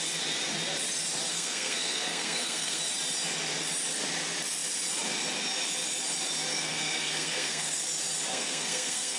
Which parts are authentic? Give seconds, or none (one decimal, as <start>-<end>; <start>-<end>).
0.0-1.3; 2.8-6.5; 7.8-8.3